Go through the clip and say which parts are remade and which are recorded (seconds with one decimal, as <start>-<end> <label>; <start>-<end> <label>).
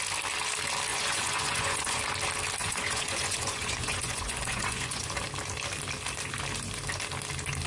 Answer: 0.0-0.9 recorded; 0.9-2.0 remade; 2.0-2.6 recorded; 2.6-5.1 remade; 5.1-7.7 recorded